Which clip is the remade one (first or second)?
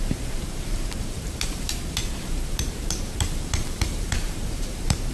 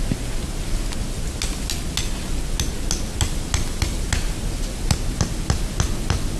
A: first